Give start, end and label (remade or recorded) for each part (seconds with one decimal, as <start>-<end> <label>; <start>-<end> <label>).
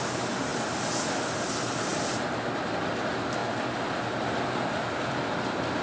0.0-5.8 recorded